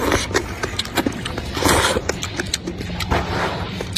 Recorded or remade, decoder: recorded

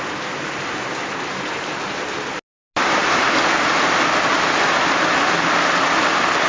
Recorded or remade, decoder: recorded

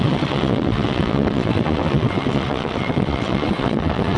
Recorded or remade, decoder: remade, vocoder, WaveNeXt